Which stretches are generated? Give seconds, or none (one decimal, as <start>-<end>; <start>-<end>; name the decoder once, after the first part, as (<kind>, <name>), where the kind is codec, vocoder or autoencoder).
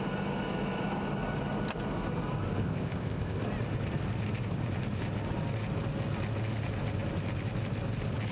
2.6-3.4 (codec, ZipCodec)